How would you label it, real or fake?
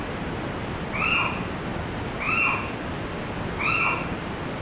real